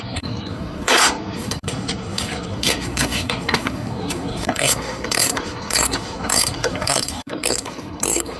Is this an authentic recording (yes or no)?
no